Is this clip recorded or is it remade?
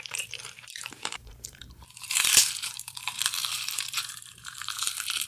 remade